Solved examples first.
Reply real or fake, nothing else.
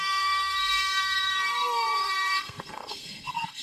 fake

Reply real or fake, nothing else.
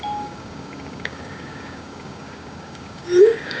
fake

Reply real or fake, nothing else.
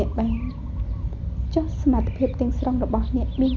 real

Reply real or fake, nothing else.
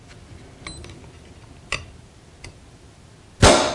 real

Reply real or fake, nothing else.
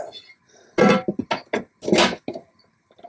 real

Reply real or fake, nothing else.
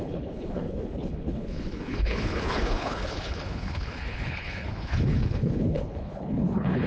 fake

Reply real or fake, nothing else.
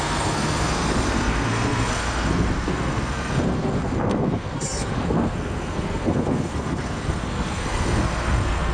fake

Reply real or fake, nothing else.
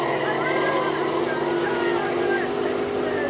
real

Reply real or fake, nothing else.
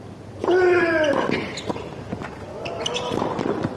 real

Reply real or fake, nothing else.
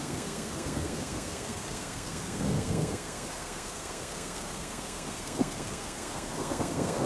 fake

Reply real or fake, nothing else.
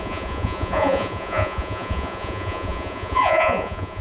fake